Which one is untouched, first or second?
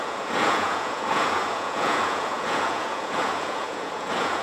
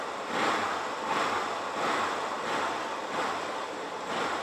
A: second